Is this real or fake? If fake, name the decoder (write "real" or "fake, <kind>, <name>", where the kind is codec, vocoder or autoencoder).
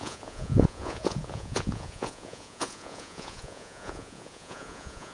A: fake, vocoder, Vocos